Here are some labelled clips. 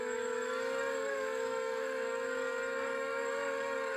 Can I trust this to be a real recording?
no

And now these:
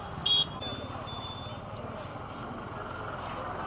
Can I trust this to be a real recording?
yes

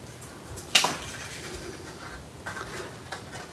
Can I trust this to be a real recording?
yes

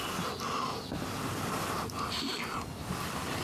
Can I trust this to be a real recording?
yes